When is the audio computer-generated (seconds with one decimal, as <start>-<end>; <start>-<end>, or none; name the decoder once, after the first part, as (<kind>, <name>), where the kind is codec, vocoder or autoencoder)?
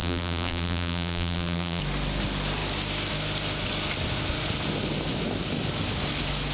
0.0-1.8 (vocoder, BigVGAN v2)